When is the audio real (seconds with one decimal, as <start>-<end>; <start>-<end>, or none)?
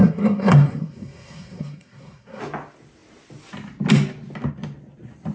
2.4-5.3